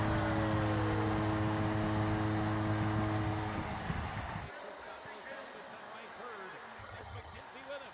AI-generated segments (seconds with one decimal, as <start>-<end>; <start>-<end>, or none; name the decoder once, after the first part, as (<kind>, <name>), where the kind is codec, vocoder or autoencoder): 6.8-7.4 (vocoder, HiFi-GAN)